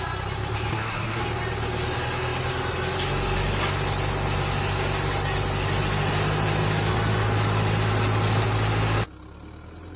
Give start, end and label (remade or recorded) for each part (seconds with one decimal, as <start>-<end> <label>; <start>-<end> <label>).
0.0-0.7 recorded; 0.7-1.2 remade; 1.2-10.0 recorded